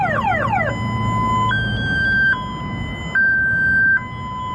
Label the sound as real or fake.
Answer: real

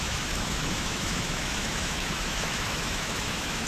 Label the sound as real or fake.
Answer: fake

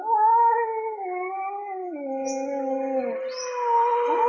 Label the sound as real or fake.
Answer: real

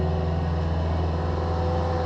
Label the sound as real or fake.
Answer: real